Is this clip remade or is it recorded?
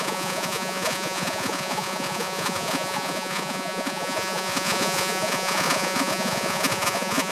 remade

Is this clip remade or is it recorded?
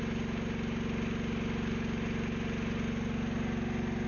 recorded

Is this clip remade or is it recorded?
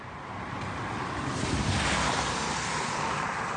recorded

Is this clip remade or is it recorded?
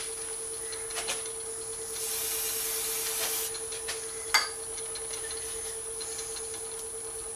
recorded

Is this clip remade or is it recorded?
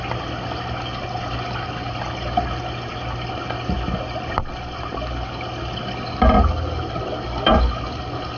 recorded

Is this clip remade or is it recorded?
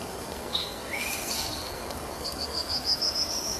remade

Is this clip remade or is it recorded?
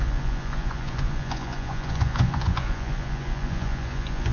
remade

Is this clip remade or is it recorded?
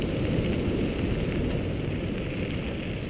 recorded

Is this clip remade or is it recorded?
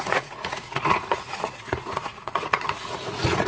remade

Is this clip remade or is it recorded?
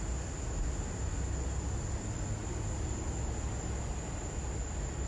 recorded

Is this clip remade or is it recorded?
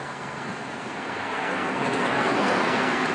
remade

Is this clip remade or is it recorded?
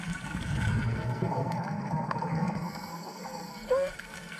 remade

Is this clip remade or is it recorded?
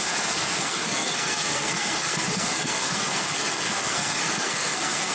remade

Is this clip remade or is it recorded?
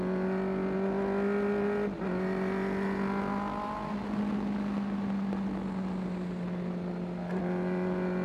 recorded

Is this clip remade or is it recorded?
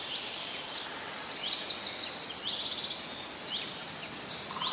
recorded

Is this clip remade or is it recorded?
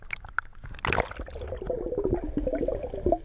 recorded